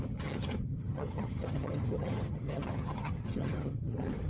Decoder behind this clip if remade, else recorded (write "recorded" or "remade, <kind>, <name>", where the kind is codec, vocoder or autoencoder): remade, vocoder, HiFi-GAN